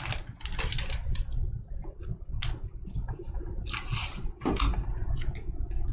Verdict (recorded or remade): recorded